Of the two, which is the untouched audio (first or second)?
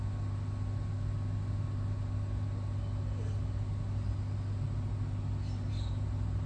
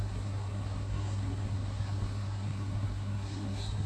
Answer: first